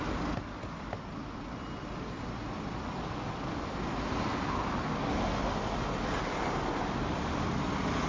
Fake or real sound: real